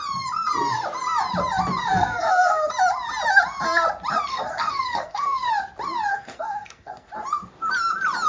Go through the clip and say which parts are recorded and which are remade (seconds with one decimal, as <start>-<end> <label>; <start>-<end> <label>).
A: 0.0-1.9 recorded; 1.9-2.7 remade; 2.7-4.3 recorded; 4.3-5.5 remade; 5.5-6.1 recorded; 6.1-7.1 remade; 7.1-8.3 recorded